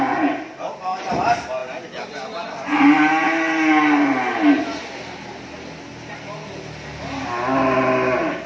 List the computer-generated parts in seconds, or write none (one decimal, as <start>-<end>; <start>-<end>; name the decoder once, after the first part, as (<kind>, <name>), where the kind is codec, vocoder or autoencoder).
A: none